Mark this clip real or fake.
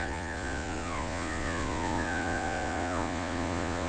fake